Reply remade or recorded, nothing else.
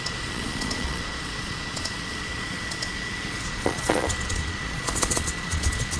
remade